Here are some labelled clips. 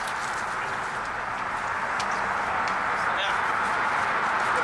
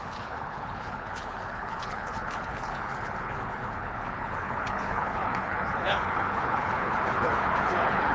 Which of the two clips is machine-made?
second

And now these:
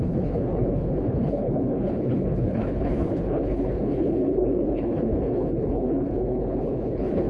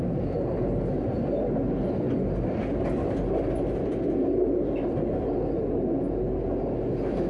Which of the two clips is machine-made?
first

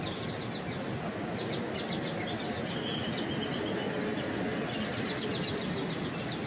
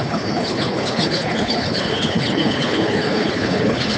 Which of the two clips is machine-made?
second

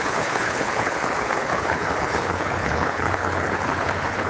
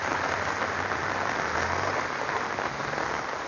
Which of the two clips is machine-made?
first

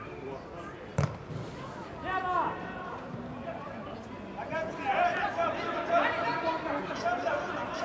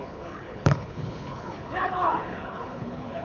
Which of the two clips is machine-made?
second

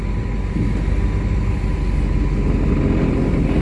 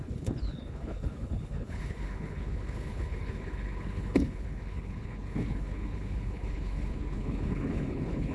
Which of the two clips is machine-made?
second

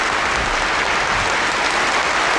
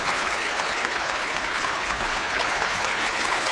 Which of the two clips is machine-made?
second